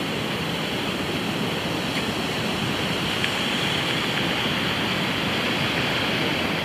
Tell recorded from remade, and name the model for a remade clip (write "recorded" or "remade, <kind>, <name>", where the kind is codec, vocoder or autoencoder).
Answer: recorded